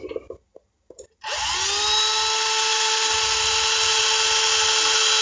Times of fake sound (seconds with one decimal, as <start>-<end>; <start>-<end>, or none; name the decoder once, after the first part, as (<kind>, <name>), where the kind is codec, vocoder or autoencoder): 2.7-4.0 (vocoder, BigVGAN v2)